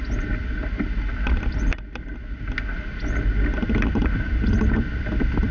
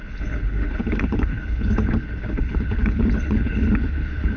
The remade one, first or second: second